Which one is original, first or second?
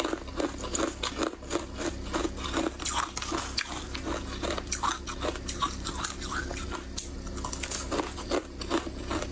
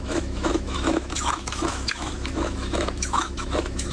first